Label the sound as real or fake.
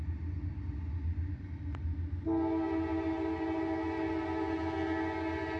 real